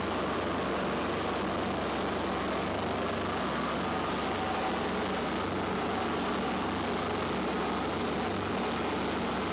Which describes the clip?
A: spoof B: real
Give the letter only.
B